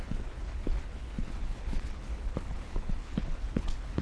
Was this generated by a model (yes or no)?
yes